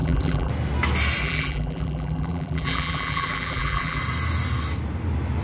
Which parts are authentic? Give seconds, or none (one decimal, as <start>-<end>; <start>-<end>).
0.5-1.2; 4.0-5.4